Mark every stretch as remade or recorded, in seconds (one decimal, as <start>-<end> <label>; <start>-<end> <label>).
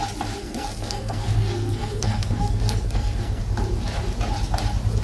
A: 0.0-0.4 recorded; 0.4-3.4 remade; 3.4-5.0 recorded